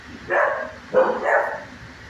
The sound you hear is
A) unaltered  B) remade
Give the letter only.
A